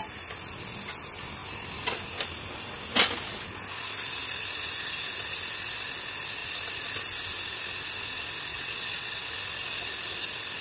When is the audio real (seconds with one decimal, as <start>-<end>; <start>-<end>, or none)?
0.0-8.5; 9.3-10.6

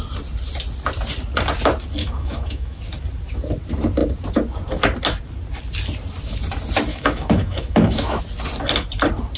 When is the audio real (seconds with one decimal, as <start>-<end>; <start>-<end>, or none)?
0.0-2.0; 2.8-6.9; 8.2-9.4

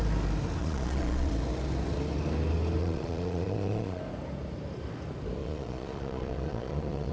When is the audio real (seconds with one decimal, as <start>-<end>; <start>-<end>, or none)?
0.0-0.6; 1.3-2.8; 4.0-5.4

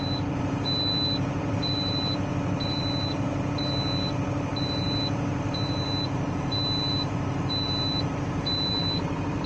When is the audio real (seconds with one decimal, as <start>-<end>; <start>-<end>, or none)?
none

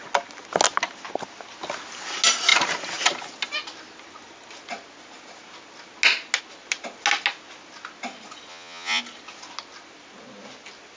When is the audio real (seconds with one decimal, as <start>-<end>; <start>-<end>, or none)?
0.0-8.5; 9.0-11.0

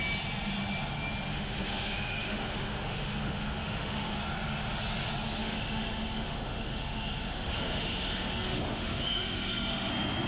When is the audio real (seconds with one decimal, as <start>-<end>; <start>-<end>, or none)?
0.0-1.3; 4.2-5.4; 9.9-10.3

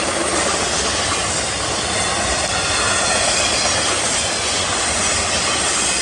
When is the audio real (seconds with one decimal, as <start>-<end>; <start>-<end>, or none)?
0.0-4.2; 5.1-6.0

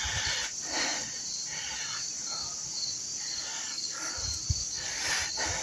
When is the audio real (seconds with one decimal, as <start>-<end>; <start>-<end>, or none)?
0.0-3.5; 4.1-4.6; 5.1-5.6